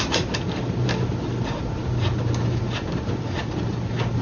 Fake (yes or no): no